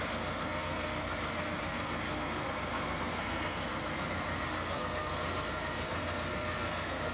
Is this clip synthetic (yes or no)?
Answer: yes